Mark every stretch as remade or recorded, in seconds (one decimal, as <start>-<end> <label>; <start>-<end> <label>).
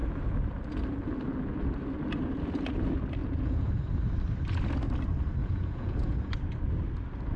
0.0-3.2 recorded; 3.2-3.9 remade; 3.9-5.4 recorded; 5.4-6.3 remade; 6.3-7.4 recorded